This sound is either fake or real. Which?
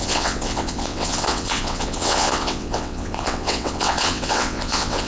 fake